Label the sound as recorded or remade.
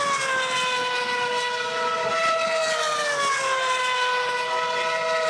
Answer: recorded